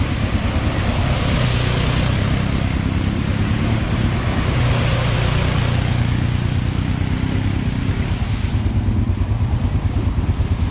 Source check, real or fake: real